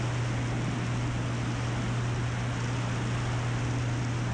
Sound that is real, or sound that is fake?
real